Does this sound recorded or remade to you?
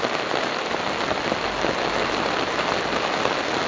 recorded